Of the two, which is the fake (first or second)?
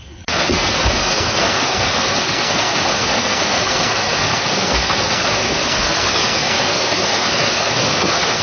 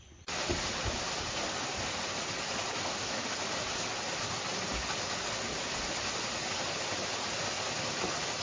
first